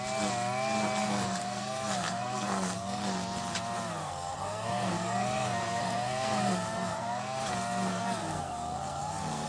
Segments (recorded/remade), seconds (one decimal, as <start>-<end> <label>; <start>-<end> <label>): 0.0-1.0 recorded; 1.0-3.0 remade; 3.0-4.0 recorded; 4.0-7.4 remade; 7.4-7.9 recorded; 7.9-9.5 remade

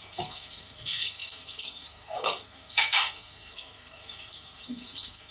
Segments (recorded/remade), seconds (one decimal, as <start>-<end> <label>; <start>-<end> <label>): 0.0-5.3 remade

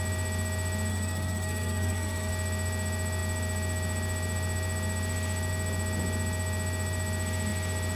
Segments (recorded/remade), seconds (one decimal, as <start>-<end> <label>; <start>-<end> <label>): 0.0-0.9 recorded; 0.9-2.3 remade; 2.3-8.0 recorded

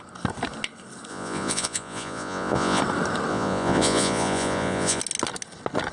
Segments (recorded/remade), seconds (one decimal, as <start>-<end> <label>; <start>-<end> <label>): 0.0-1.1 recorded; 1.1-2.8 remade; 2.8-3.3 recorded; 3.3-5.0 remade; 5.0-5.9 recorded

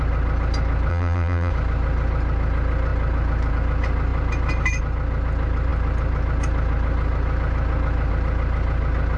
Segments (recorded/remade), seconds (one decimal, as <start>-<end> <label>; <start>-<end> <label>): 0.0-0.9 recorded; 0.9-1.5 remade; 1.5-9.2 recorded

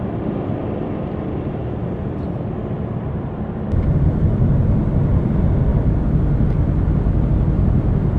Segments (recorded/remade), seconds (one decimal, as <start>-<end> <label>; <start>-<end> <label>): 0.0-1.6 remade; 1.6-2.9 recorded; 2.9-8.2 remade

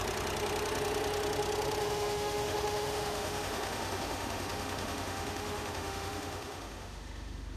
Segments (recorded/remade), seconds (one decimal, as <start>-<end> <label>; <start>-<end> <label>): 0.0-1.8 recorded; 1.8-7.6 remade

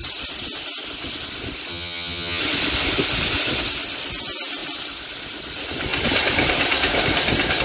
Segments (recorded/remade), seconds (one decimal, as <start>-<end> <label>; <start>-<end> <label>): 0.0-1.7 recorded; 1.7-2.4 remade; 2.4-7.6 recorded